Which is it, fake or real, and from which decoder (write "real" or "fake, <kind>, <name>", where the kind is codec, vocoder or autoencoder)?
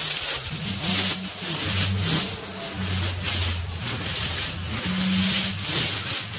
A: real